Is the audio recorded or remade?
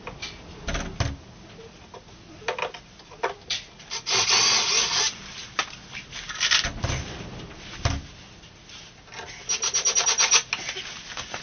recorded